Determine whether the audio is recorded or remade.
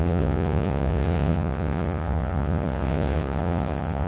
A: remade